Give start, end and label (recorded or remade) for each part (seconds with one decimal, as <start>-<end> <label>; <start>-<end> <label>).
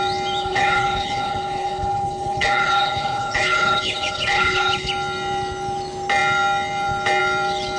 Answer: 0.0-0.4 recorded; 0.4-4.9 remade; 4.9-7.8 recorded